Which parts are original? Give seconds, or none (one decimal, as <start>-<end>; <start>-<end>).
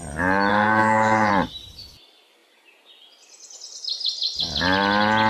0.0-0.5; 1.3-5.3